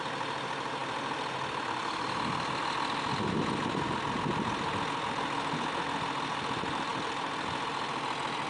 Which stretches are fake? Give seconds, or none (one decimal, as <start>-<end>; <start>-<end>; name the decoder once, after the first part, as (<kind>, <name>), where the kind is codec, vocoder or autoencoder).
none